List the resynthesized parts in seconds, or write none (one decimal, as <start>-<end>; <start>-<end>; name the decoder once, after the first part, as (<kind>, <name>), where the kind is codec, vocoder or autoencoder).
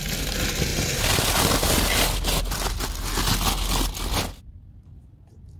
none